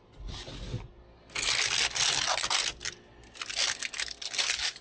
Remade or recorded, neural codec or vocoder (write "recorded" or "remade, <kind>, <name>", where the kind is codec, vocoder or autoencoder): recorded